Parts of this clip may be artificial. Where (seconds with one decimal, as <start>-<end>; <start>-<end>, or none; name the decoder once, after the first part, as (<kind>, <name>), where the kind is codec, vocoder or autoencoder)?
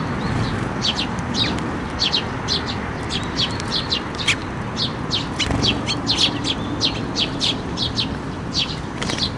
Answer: 0.0-4.4 (vocoder, BigVGAN v2); 7.4-9.4